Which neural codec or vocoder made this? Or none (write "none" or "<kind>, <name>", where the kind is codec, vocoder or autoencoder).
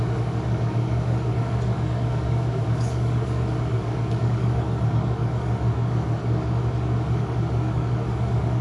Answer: codec, DAC